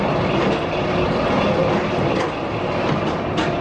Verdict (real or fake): real